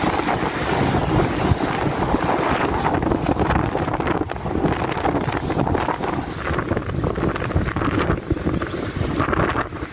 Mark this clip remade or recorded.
recorded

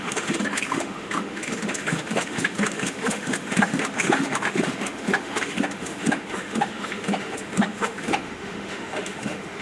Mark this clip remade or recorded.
remade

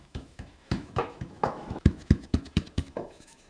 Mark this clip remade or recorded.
remade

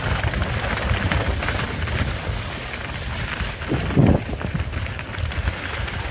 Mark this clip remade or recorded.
recorded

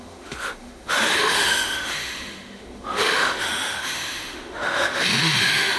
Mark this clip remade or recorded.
remade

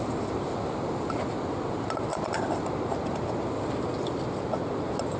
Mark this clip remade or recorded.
recorded